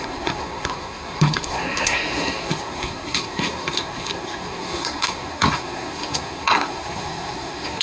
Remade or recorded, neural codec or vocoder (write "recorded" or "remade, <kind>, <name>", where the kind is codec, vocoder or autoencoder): remade, codec, SNAC